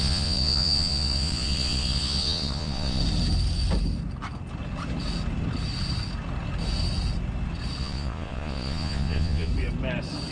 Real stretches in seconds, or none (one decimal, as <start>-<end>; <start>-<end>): 3.0-7.8; 9.5-10.3